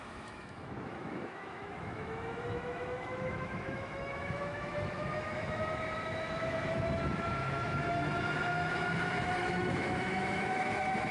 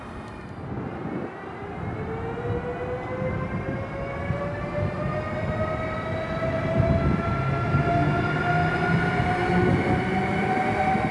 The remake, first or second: first